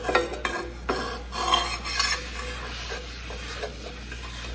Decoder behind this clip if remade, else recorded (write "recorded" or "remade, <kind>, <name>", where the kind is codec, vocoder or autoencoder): recorded